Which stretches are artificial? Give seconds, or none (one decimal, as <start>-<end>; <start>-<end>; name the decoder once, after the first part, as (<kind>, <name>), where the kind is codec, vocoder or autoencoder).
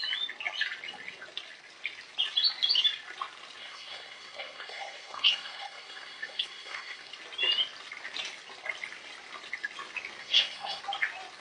3.6-7.1 (codec, SNAC); 10.2-10.8